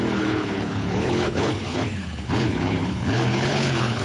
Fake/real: fake